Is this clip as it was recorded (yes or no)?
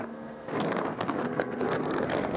no